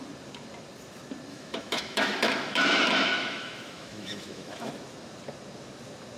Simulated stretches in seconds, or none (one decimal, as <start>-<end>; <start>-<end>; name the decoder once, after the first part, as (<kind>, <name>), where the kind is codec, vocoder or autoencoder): 1.3-4.7 (autoencoder, DAC-VAE)